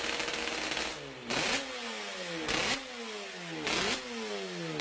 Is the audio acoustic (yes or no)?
yes